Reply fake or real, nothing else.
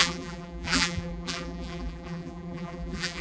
fake